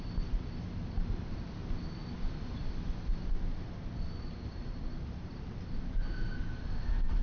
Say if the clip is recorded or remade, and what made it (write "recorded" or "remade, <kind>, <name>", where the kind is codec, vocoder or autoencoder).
recorded